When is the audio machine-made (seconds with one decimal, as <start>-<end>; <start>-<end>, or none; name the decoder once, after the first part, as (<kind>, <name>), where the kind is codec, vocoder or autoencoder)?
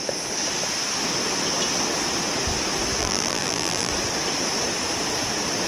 3.0-3.9 (vocoder, BigVGAN v2)